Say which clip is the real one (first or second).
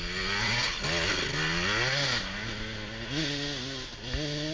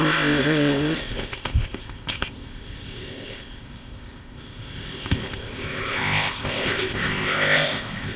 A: first